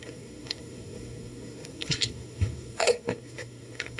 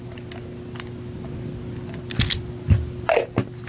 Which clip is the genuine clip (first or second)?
second